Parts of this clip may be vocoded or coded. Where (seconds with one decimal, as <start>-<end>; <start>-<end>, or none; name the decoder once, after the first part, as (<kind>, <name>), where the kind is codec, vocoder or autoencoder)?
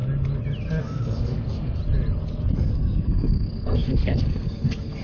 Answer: 0.8-1.8 (codec, SNAC); 2.5-5.0